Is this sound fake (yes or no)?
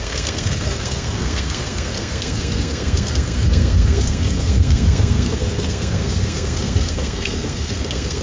yes